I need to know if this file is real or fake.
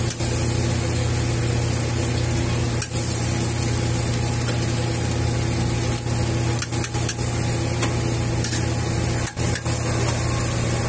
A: real